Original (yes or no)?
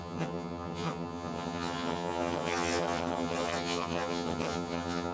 no